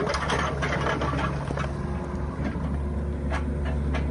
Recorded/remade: recorded